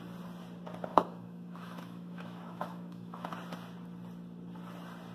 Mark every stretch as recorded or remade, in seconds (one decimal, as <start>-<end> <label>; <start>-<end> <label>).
0.0-0.9 recorded; 0.9-3.3 remade; 3.3-5.1 recorded